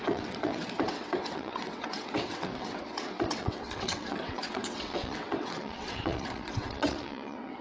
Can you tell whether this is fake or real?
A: fake